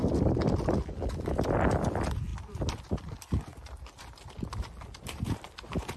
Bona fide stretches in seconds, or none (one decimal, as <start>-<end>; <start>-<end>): 0.0-1.3